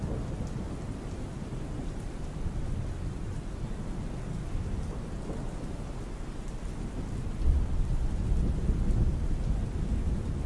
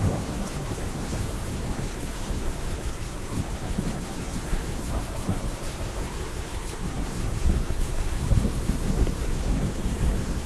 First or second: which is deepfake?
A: second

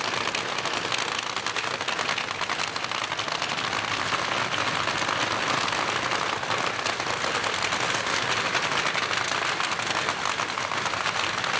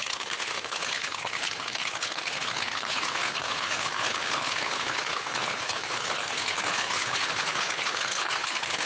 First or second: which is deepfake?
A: second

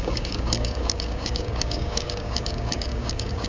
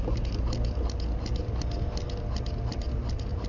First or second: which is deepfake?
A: first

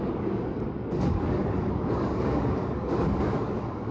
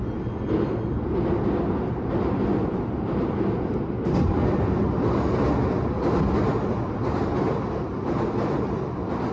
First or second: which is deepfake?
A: first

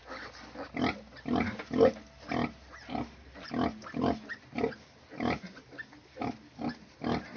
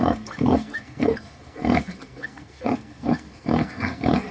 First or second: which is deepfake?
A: second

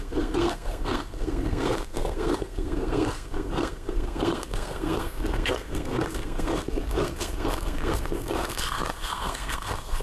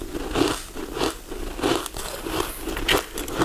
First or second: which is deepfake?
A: first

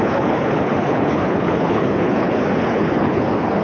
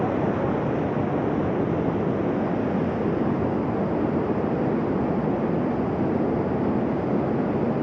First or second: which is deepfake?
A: first